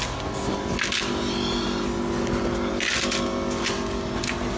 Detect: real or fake real